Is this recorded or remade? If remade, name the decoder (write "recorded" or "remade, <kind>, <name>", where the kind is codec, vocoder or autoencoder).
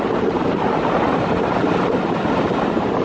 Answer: remade, vocoder, BigVGAN v2